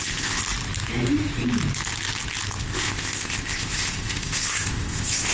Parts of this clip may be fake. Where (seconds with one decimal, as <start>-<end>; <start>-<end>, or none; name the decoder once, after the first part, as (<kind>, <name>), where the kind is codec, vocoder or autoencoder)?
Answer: 0.0-0.4 (codec, ZipCodec); 2.6-5.3